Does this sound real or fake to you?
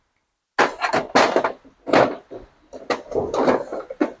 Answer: real